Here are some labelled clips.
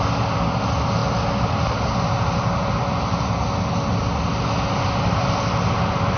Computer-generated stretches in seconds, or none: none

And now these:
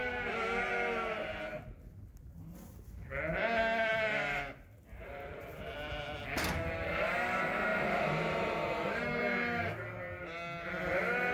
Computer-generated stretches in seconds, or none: 7.7-9.2 (vocoder, BigVGAN v2)

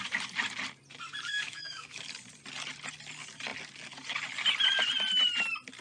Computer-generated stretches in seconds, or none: 1.3-2.0 (autoencoder, DAC-VAE)

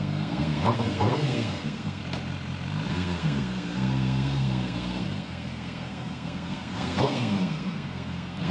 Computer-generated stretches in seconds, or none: 0.0-2.0 (codec, SNAC); 2.9-8.5

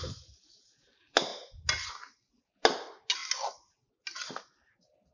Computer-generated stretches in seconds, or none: none

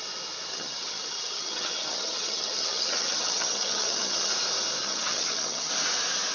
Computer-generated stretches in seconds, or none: 0.5-4.3 (vocoder, HiFi-GAN); 4.8-5.7

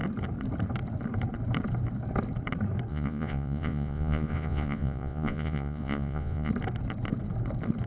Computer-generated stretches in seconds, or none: 2.9-6.5 (vocoder, Vocos)